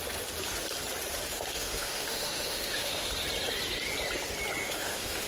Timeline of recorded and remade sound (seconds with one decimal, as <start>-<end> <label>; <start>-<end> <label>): 0.0-1.5 recorded; 1.5-3.1 remade; 3.1-4.6 recorded; 4.6-5.3 remade